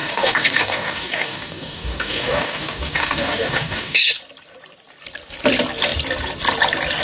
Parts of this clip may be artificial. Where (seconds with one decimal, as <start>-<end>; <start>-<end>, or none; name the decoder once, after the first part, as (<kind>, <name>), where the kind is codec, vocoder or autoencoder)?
0.0-4.2 (codec, DAC)